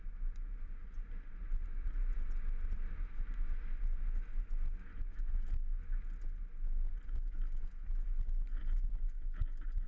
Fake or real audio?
real